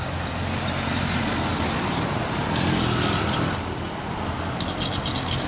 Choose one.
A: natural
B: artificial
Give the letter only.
A